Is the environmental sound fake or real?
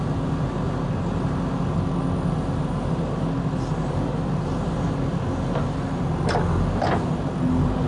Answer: real